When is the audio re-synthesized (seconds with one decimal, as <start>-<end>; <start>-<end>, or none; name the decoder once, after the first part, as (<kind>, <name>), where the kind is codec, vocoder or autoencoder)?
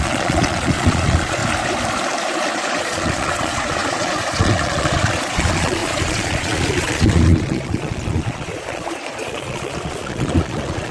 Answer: 0.0-1.4 (vocoder, Vocos); 2.5-10.9